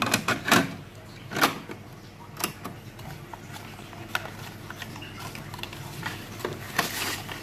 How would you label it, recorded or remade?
recorded